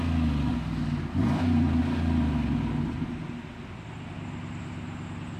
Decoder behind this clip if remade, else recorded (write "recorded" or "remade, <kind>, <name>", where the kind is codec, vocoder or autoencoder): recorded